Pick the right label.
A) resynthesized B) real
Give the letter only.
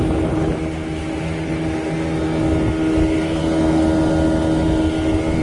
B